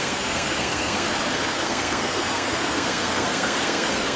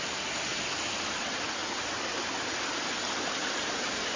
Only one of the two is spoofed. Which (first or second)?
first